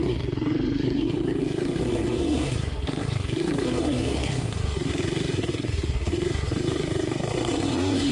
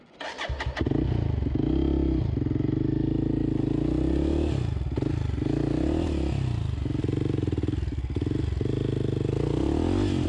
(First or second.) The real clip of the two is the second